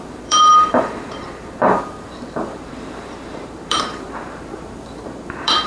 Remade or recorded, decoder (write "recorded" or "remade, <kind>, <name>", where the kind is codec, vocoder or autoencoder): remade, vocoder, BigVGAN v2